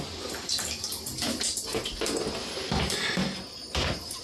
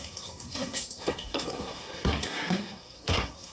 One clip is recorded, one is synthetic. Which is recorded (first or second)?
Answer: first